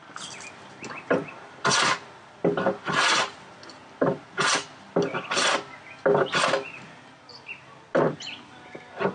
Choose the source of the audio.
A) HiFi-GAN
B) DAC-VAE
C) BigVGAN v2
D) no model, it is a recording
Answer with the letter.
D